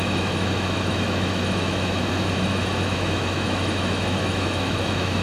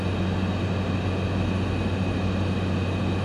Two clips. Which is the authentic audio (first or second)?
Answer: second